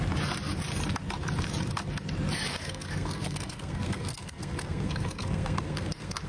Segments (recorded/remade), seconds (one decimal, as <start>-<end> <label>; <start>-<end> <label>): 0.0-2.5 recorded; 2.5-6.3 remade